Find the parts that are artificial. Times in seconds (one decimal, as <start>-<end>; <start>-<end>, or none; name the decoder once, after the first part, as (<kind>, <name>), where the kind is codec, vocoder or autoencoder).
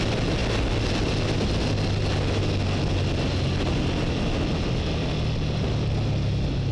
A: none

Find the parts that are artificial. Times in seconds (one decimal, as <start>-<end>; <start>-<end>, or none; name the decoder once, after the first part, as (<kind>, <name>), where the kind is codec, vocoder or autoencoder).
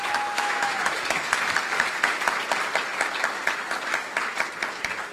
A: 0.0-1.3 (autoencoder, DAC-VAE)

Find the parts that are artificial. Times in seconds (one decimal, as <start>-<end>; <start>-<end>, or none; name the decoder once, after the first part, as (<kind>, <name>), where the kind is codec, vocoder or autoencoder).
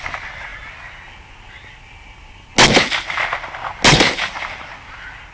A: none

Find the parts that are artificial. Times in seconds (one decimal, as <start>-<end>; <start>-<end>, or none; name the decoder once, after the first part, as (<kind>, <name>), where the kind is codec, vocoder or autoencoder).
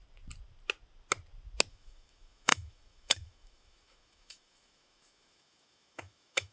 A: 1.7-6.5 (autoencoder, DAC-VAE)